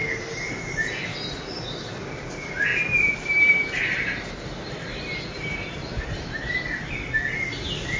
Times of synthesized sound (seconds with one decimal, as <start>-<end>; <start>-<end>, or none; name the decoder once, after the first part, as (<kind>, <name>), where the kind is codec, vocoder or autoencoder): 2.7-6.9 (vocoder, BigVGAN v2)